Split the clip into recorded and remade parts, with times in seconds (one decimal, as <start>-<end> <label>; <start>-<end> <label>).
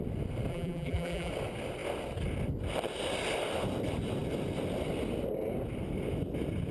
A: 0.0-0.5 recorded; 0.5-1.3 remade; 1.3-6.7 recorded